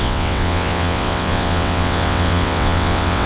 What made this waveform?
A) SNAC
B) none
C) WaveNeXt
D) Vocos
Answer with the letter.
C